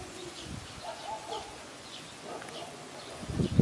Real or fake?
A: fake